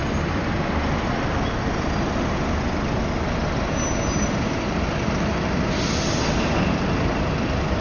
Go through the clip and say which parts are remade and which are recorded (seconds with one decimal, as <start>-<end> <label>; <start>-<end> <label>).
0.0-7.8 recorded